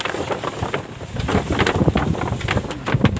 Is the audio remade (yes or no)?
no